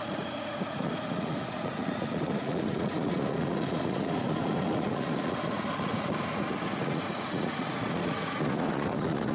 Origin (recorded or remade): remade